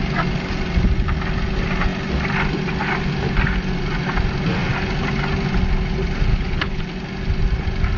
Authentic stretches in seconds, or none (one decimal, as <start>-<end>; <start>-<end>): 0.0-6.3; 6.8-8.0